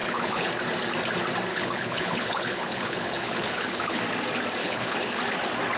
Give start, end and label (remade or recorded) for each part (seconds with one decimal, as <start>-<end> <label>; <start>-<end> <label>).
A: 0.0-0.5 remade; 0.5-1.5 recorded; 1.5-4.0 remade; 4.0-4.6 recorded; 4.6-5.2 remade; 5.2-5.8 recorded